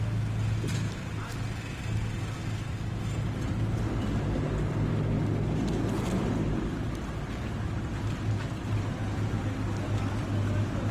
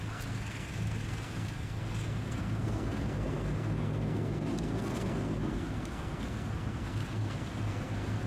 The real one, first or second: first